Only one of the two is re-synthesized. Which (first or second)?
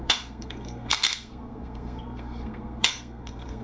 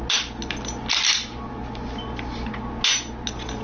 first